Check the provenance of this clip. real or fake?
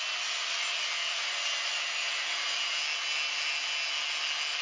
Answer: real